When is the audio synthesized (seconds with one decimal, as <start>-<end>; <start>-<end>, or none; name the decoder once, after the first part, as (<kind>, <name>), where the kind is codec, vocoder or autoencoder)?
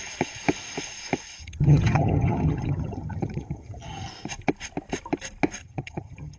1.4-4.1 (vocoder, HiFi-GAN); 5.6-6.4